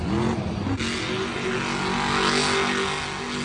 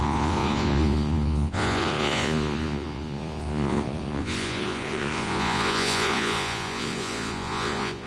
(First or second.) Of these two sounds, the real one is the first